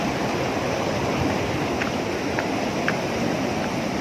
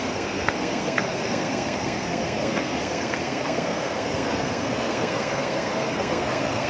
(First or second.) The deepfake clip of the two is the second